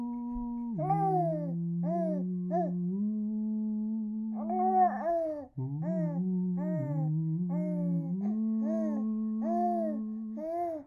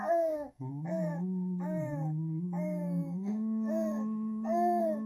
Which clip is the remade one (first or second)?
second